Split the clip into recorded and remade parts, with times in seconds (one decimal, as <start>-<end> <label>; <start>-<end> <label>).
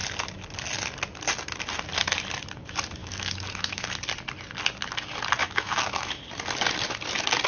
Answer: 0.0-3.0 recorded; 3.0-3.9 remade; 3.9-5.4 recorded; 5.4-6.2 remade; 6.2-7.5 recorded